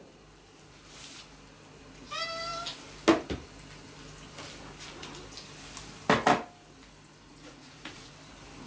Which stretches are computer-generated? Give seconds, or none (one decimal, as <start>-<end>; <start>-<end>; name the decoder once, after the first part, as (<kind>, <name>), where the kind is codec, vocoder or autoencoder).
7.3-8.1 (vocoder, Vocos)